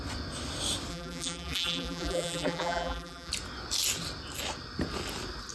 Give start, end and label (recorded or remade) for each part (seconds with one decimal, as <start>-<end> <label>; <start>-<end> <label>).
0.0-0.9 recorded; 0.9-3.3 remade; 3.3-5.5 recorded